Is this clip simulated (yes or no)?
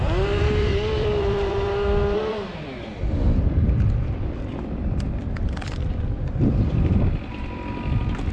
yes